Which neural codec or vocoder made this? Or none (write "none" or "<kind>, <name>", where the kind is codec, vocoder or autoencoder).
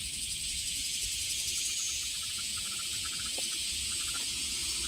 vocoder, Vocos